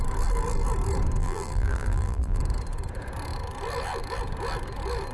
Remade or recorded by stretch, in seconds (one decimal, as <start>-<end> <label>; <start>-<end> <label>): 0.0-1.2 recorded; 1.2-2.4 remade; 2.4-5.1 recorded